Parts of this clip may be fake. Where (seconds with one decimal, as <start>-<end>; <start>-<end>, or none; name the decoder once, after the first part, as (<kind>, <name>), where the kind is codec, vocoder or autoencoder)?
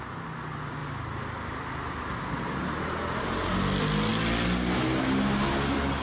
none